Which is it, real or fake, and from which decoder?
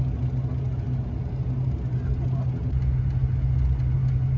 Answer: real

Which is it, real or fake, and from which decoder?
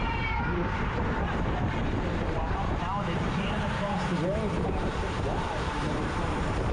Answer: fake, vocoder, BigVGAN v2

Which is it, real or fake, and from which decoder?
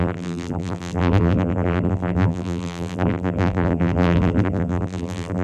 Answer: fake, vocoder, BigVGAN v2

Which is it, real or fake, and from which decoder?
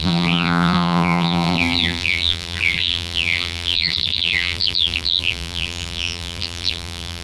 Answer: fake, vocoder, BigVGAN v2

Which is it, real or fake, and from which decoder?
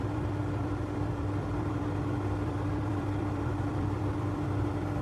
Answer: fake, vocoder, BigVGAN v2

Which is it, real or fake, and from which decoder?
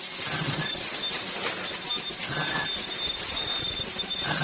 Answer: fake, vocoder, BigVGAN v2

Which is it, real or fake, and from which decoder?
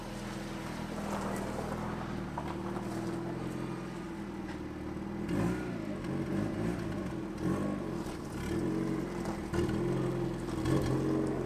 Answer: real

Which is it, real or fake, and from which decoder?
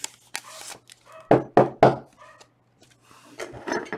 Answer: real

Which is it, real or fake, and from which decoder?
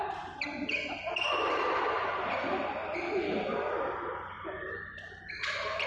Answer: fake, vocoder, BigVGAN v2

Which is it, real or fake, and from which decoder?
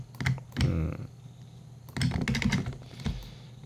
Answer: real